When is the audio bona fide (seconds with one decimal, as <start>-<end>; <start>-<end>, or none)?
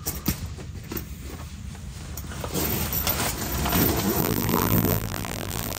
0.0-4.2